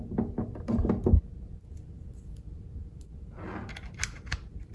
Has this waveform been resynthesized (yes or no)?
no